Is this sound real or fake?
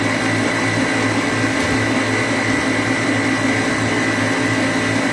real